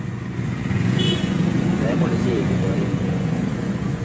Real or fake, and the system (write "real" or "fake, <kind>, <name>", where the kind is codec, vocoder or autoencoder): fake, vocoder, Vocos